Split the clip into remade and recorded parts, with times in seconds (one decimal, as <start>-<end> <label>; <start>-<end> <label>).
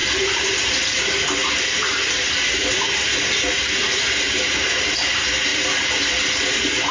0.0-1.4 recorded; 1.4-5.1 remade; 5.1-5.5 recorded; 5.5-6.0 remade; 6.0-6.9 recorded